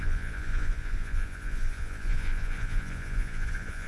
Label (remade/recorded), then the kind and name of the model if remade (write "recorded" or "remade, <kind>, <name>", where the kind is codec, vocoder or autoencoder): remade, vocoder, Vocos